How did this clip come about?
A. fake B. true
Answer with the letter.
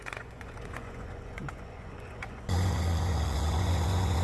A